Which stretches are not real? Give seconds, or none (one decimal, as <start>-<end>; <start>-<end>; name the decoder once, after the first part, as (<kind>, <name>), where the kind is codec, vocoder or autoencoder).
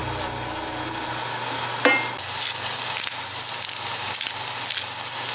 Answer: none